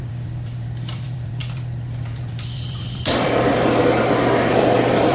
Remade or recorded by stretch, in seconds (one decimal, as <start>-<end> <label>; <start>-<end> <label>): 0.0-5.1 remade